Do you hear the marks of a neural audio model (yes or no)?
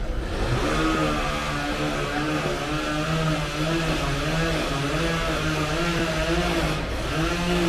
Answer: no